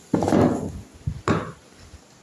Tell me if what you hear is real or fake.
real